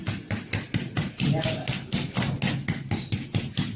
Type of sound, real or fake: real